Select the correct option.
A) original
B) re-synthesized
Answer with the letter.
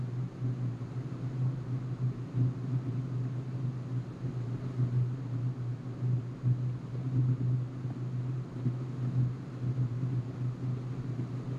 A